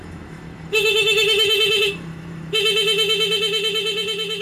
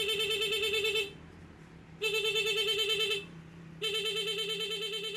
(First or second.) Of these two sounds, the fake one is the first